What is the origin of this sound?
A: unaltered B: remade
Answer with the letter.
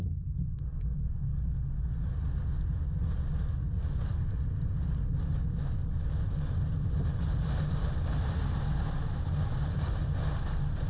A